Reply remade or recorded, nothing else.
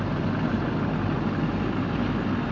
recorded